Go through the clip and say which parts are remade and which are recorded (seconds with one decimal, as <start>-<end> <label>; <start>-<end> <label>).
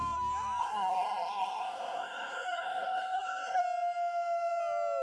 0.0-0.6 recorded; 0.6-3.6 remade; 3.6-5.0 recorded